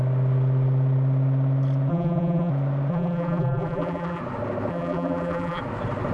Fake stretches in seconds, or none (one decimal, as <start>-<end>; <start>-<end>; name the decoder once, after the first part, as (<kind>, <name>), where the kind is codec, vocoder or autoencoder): 1.9-2.5 (vocoder, BigVGAN v2); 2.9-4.2; 4.7-5.6